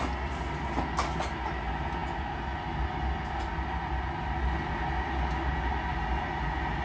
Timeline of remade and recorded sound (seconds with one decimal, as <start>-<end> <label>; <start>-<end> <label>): 0.0-6.8 recorded